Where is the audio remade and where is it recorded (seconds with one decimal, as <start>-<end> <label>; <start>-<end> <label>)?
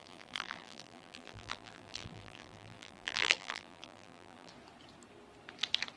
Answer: 0.0-4.5 remade; 4.5-6.0 recorded